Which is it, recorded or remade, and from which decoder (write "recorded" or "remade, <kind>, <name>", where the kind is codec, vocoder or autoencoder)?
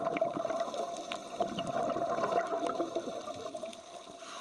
recorded